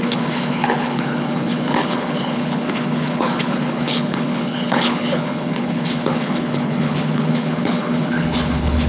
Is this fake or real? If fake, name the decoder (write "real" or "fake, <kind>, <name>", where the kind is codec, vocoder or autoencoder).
fake, codec, HILCodec